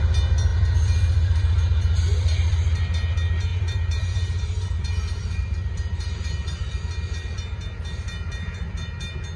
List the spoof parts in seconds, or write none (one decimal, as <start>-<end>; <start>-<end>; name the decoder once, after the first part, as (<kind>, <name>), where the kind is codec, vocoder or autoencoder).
3.5-6.8 (vocoder, BigVGAN v2)